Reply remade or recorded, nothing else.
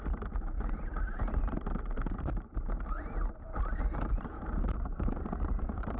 remade